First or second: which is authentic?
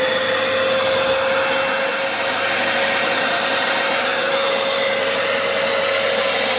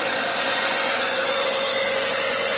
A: first